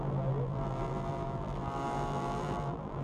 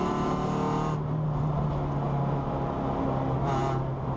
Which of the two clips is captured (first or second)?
second